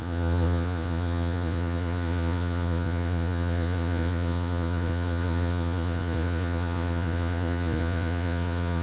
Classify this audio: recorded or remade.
remade